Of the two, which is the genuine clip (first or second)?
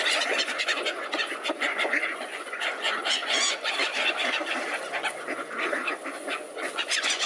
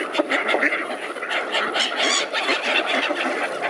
second